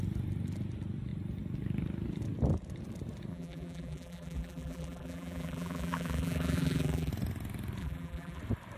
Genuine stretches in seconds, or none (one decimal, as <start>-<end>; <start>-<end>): 0.0-3.3; 7.1-7.8; 8.4-8.8